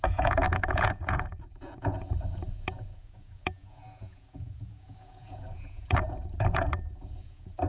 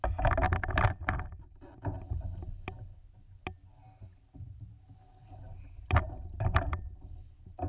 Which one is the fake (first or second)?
first